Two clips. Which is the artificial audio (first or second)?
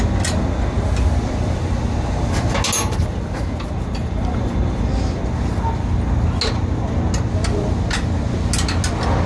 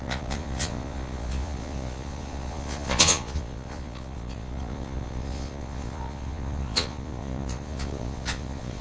second